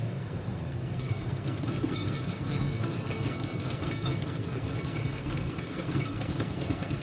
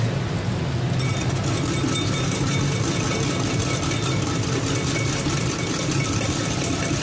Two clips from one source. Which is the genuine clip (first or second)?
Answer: second